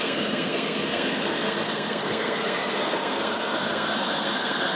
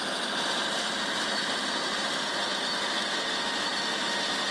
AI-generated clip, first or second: first